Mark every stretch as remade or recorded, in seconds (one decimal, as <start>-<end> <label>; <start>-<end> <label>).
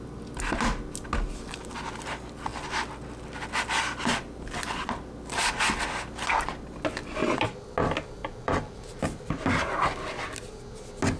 0.0-8.2 recorded; 8.2-9.7 remade; 9.7-11.2 recorded